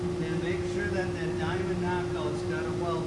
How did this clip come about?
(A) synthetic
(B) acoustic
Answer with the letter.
B